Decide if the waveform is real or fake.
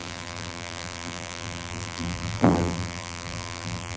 fake